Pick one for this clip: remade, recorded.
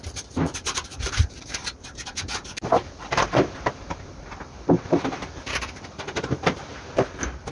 remade